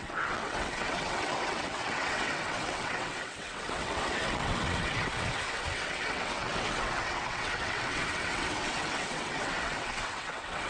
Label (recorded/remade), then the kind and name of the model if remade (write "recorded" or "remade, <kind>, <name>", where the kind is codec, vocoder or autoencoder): remade, vocoder, WaveNeXt